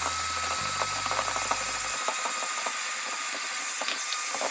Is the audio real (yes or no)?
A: yes